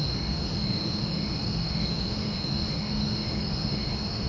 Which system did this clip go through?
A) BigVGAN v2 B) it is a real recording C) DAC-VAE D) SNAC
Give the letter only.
C